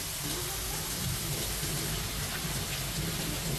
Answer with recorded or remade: recorded